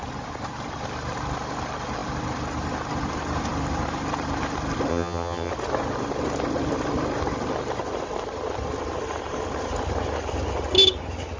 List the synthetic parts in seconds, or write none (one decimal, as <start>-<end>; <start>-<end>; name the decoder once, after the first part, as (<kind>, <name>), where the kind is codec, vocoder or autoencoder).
4.9-5.5 (vocoder, HiFi-GAN)